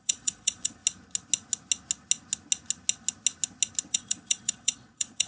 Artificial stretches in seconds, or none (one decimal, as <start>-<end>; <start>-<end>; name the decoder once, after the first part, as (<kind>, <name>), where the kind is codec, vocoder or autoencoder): 0.0-0.8 (vocoder, Vocos); 3.9-5.3